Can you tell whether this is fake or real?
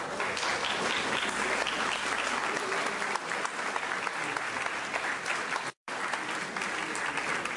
real